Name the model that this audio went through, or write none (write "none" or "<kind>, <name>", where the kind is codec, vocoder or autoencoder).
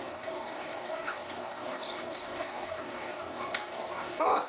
codec, DAC